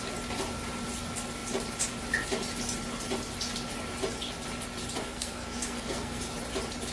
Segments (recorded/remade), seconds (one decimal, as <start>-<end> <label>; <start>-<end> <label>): 0.0-5.0 recorded; 5.0-6.2 remade; 6.2-6.9 recorded